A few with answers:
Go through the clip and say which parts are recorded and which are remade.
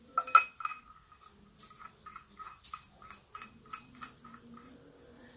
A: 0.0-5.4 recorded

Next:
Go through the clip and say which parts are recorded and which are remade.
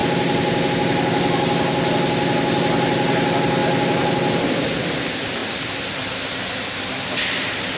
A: 0.0-7.8 recorded